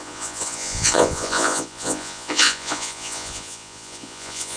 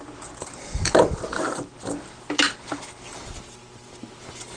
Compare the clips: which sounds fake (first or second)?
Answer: first